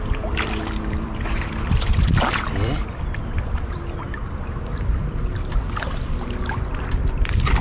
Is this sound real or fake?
fake